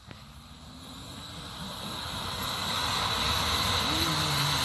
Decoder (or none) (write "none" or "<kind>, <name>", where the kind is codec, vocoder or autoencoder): none